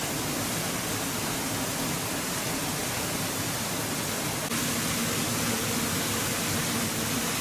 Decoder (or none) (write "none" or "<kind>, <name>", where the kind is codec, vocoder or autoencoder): none